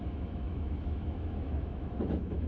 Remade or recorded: remade